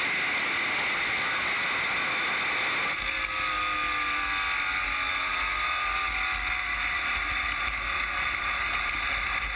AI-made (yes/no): no